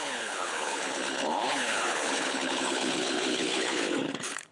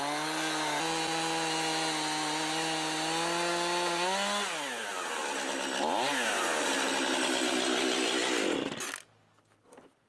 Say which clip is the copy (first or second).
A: first